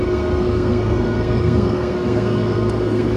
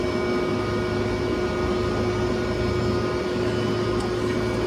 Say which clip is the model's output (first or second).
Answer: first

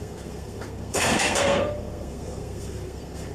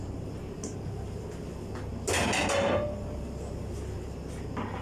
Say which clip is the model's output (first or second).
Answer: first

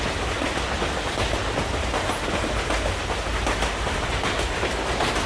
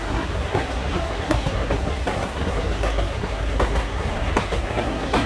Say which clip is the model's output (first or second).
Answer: second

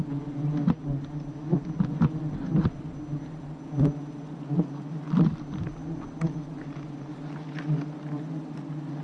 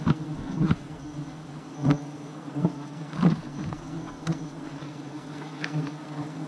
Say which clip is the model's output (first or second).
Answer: second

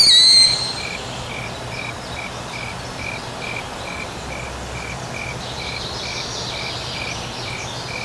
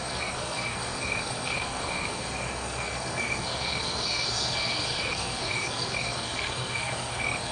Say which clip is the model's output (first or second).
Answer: second